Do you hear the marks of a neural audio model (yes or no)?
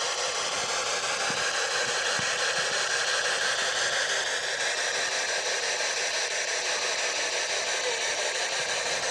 no